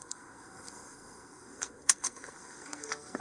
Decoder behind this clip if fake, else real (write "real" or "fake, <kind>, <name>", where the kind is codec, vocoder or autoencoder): fake, codec, SNAC